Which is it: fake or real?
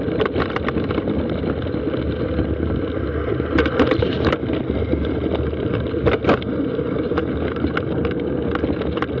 real